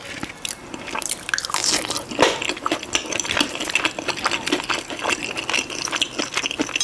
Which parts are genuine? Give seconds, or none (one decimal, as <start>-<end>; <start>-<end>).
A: 0.0-6.8